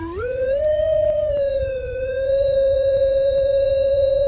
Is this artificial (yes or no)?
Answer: yes